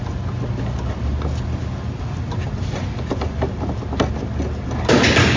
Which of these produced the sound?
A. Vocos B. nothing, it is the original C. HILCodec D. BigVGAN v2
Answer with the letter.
B